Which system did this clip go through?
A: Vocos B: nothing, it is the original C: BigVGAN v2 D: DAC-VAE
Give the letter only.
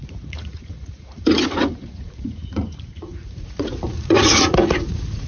A